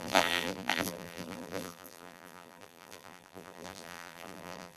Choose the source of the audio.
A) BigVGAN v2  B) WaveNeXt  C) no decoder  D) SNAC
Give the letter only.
A